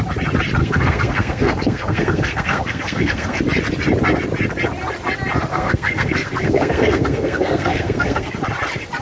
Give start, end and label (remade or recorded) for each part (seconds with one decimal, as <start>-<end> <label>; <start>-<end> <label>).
0.0-0.6 recorded; 0.6-3.4 remade; 3.4-5.5 recorded; 5.5-8.3 remade; 8.3-9.0 recorded